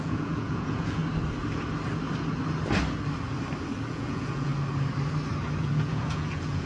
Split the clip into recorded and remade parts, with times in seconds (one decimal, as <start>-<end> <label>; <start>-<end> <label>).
0.0-1.0 remade; 1.0-3.9 recorded; 3.9-4.5 remade; 4.5-5.6 recorded; 5.6-6.7 remade